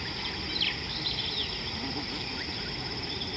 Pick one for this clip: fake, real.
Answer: real